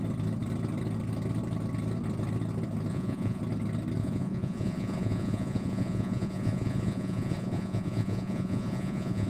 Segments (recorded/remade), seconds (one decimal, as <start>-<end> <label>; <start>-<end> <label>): 0.0-2.9 recorded; 2.9-3.4 remade; 3.4-4.0 recorded; 4.0-9.3 remade